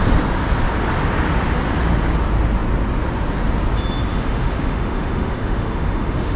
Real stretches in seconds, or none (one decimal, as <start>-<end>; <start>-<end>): 0.0-4.1